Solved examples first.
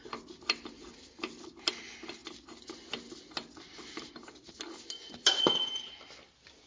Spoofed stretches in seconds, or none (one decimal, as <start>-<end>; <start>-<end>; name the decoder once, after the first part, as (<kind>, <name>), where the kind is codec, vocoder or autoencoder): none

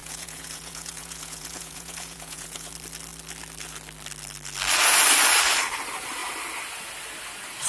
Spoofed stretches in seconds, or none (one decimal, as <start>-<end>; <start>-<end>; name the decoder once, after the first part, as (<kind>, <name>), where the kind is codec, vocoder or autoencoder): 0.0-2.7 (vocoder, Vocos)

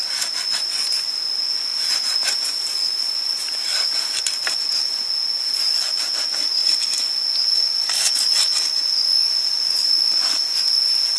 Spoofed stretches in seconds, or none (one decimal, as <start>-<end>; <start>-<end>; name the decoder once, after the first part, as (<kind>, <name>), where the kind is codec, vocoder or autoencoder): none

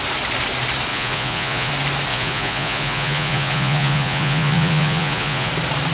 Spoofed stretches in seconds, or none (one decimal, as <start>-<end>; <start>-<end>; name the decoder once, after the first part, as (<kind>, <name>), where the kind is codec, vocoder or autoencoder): 0.9-1.7 (vocoder, Vocos); 2.1-5.5